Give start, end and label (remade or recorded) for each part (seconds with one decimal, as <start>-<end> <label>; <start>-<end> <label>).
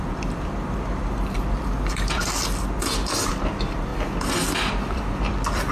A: 0.0-2.2 remade; 2.2-3.3 recorded; 3.3-3.9 remade; 3.9-4.7 recorded; 4.7-5.7 remade